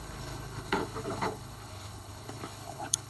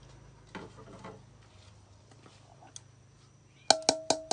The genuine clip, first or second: second